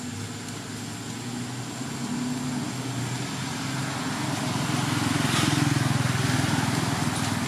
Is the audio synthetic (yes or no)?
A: no